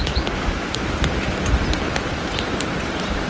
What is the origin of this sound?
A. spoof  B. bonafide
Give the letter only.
B